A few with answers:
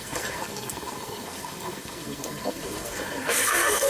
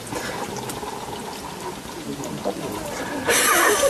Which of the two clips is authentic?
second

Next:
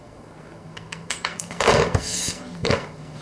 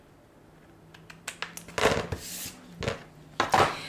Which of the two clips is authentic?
second